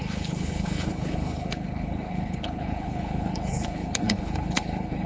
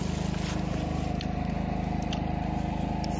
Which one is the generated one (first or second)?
first